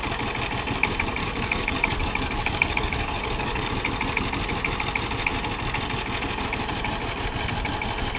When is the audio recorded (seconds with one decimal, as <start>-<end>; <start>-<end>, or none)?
0.0-1.2; 3.7-8.2